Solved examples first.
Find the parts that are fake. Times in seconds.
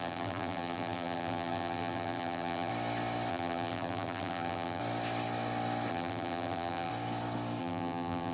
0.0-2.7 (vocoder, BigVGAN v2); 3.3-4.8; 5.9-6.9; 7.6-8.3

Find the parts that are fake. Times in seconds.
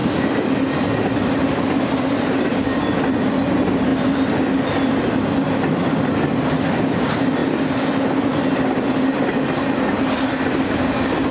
none